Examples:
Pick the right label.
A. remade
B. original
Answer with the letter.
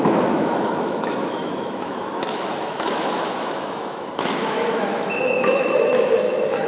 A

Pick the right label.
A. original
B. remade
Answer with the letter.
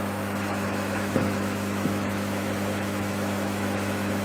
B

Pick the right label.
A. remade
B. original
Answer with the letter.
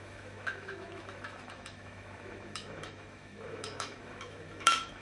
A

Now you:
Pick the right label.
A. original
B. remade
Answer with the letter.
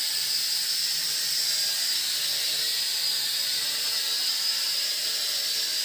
A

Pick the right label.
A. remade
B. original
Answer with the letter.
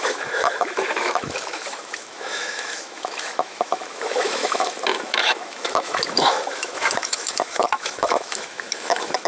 A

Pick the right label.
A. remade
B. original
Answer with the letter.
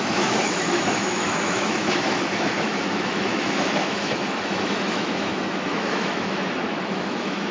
A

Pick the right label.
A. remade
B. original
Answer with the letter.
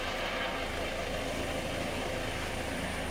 B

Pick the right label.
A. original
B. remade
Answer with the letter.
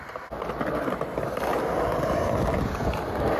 A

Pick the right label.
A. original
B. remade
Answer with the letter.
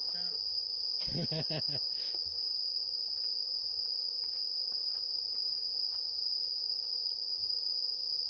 A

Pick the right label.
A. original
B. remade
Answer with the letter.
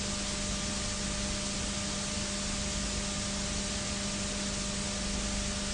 A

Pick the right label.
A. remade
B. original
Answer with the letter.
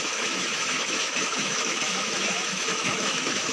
A